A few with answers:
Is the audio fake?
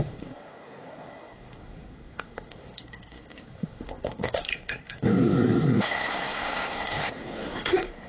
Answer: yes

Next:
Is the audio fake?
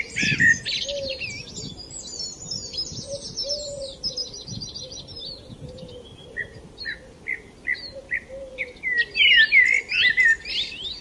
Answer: no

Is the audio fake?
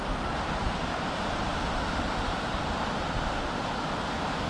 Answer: no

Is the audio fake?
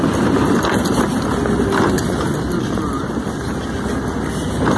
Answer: no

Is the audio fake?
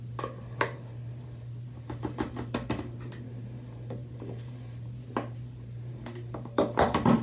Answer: no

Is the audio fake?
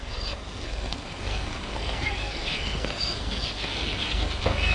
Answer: yes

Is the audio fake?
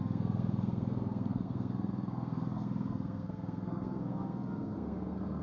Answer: yes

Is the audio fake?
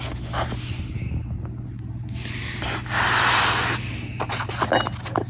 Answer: no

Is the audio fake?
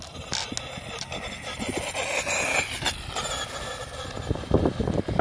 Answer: no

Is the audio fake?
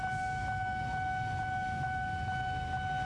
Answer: no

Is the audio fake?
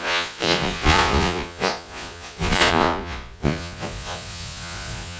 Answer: yes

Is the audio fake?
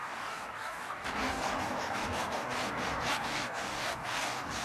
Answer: yes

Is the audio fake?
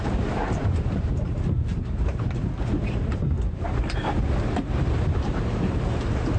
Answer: yes